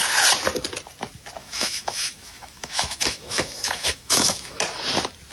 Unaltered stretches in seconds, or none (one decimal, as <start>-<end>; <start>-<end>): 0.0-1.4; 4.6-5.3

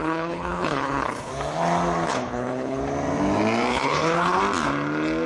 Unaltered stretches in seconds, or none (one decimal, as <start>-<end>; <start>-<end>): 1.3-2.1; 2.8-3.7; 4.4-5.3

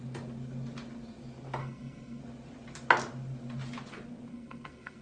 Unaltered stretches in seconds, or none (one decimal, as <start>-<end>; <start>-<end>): 0.0-1.6; 2.2-4.3